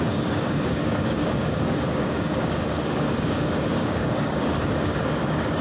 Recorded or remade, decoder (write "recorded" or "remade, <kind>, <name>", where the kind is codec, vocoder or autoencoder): remade, codec, DAC